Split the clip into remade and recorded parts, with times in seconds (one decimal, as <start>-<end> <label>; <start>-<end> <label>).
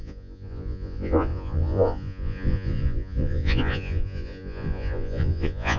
0.0-5.8 remade